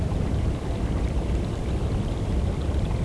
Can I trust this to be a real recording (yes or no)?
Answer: no